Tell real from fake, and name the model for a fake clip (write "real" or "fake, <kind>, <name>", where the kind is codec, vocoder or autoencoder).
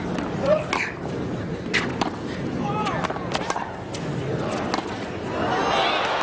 real